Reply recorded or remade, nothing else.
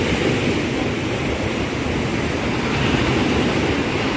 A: recorded